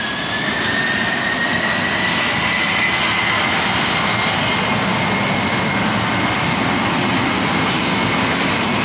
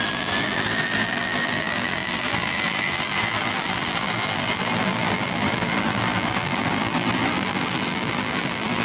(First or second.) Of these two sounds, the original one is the first